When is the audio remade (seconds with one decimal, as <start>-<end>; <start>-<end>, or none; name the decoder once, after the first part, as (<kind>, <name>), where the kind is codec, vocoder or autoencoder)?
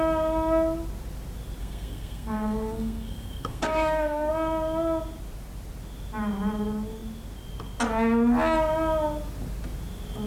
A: 1.6-4.3 (codec, SNAC)